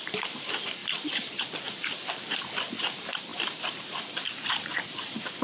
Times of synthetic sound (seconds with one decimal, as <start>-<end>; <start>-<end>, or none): 0.0-5.4

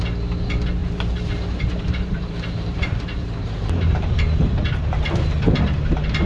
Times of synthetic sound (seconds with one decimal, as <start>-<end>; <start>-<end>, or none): 0.8-4.1

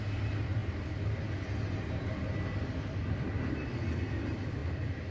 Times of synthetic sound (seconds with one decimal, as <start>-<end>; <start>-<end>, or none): none

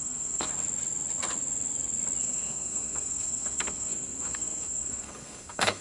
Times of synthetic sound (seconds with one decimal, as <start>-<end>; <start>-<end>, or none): 0.0-0.5; 2.2-5.8